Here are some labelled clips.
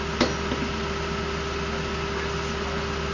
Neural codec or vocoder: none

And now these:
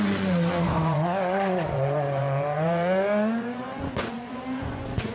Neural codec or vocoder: vocoder, Vocos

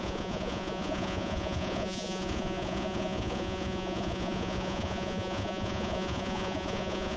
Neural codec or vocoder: vocoder, Vocos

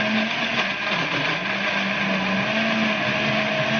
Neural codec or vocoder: none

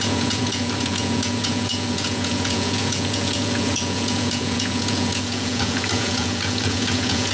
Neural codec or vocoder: vocoder, Vocos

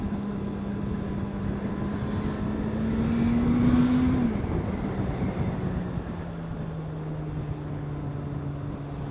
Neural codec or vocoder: none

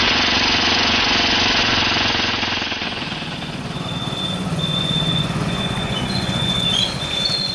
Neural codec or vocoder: vocoder, Vocos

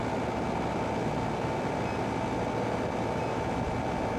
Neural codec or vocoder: none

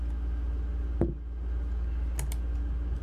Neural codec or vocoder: none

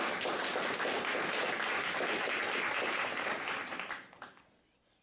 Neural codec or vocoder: none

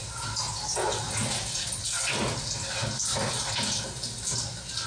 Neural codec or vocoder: none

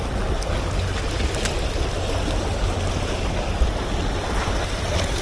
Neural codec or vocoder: none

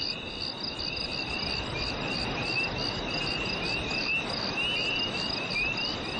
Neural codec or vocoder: none